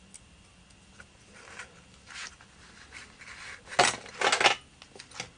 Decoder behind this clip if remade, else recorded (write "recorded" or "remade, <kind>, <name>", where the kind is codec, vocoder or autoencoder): recorded